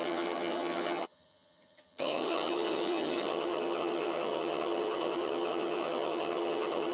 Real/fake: fake